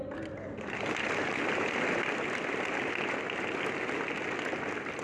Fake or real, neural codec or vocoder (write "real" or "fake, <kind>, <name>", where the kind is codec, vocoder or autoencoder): real